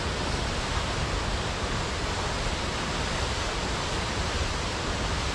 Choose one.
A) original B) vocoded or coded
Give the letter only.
A